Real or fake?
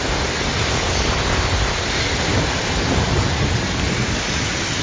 real